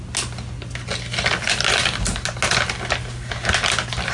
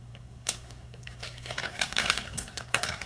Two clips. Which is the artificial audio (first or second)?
second